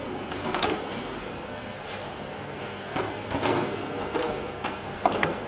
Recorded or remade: remade